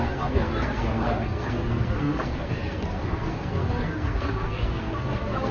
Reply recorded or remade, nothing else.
remade